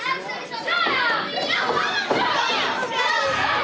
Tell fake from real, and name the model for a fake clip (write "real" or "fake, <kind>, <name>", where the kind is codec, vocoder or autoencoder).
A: real